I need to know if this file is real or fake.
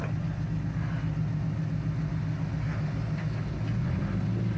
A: real